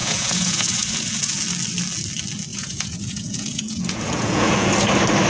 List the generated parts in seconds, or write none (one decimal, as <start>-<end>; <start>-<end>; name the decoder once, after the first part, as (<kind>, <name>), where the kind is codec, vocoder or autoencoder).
0.0-1.4 (vocoder, Vocos); 2.5-4.7